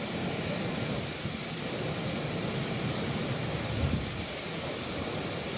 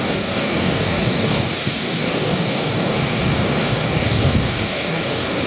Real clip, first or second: first